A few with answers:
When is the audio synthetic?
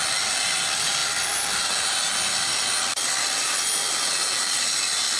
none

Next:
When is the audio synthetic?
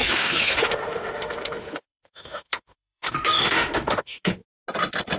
0.0-4.4 (autoencoder, DAC-VAE)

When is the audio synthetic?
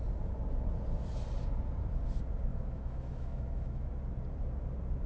2.5-3.9 (autoencoder, DAC-VAE)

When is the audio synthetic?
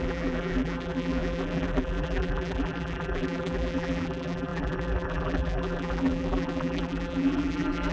0.0-7.9 (vocoder, BigVGAN v2)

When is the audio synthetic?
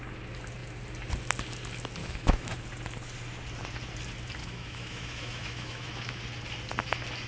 2.0-2.5 (autoencoder, DAC-VAE); 4.4-6.2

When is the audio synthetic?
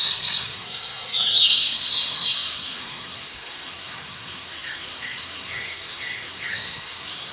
0.0-7.3 (codec, SNAC)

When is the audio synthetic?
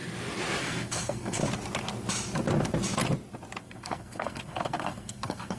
0.6-1.4 (codec, SNAC); 3.6-5.6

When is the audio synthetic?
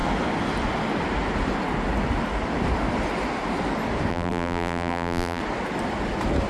4.1-5.4 (vocoder, BigVGAN v2)